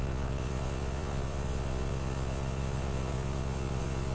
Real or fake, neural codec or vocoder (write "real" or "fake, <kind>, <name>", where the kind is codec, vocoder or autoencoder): fake, vocoder, Vocos